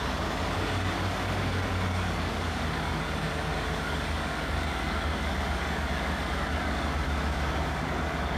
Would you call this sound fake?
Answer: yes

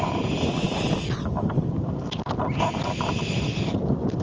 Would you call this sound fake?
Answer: no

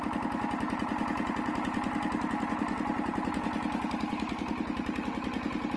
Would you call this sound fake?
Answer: no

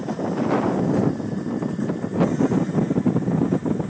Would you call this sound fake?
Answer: no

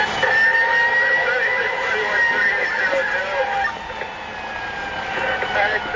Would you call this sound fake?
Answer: no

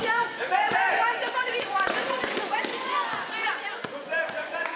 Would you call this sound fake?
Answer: yes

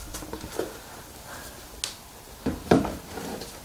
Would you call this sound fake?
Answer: no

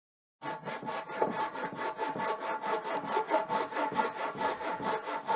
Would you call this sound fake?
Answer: no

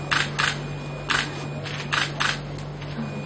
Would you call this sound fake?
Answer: no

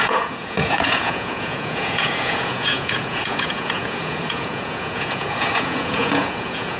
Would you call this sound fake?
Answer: yes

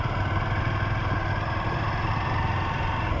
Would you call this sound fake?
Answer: no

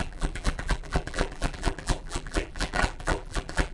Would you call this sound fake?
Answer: yes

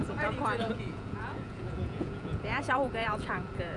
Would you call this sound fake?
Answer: yes